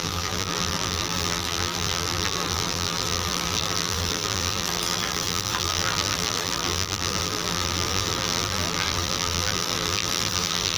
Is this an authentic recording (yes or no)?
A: no